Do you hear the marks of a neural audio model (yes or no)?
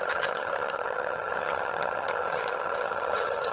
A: yes